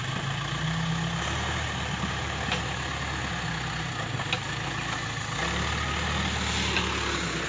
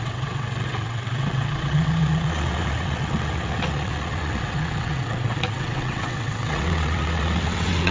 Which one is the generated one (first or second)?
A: second